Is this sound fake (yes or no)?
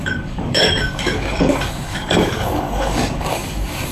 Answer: yes